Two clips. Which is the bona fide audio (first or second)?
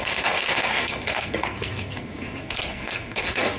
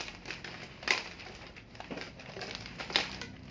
second